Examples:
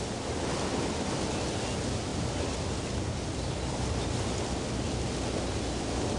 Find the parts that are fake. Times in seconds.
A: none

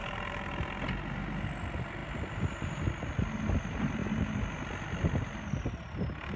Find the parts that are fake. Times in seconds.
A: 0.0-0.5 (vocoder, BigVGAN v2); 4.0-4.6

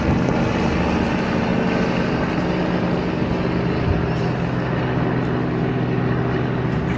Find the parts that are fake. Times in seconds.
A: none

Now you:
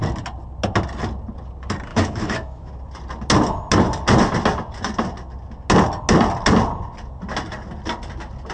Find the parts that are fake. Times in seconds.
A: 1.9-2.7 (autoencoder, DAC-VAE)